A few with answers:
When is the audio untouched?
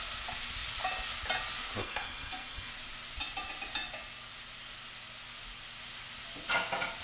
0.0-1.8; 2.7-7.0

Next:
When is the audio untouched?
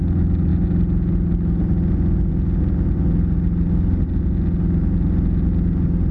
0.0-6.1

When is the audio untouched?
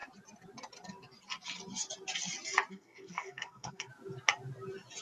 0.0-2.7; 3.9-5.0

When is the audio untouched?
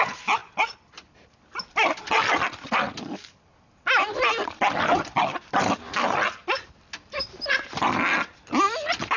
0.0-9.2